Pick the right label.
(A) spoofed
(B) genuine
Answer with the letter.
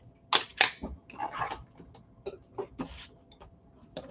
B